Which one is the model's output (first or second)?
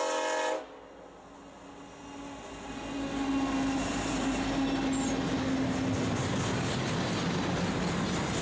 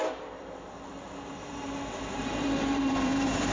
second